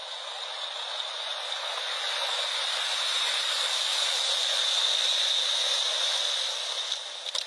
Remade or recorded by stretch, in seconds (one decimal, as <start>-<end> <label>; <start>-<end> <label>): 0.0-0.5 recorded; 0.5-1.3 remade; 1.3-3.3 recorded; 3.3-3.9 remade; 3.9-6.2 recorded; 6.2-7.5 remade